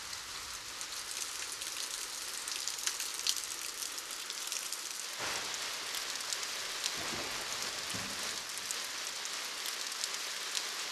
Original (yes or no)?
yes